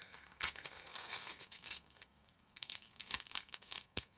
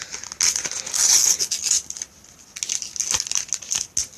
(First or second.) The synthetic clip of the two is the first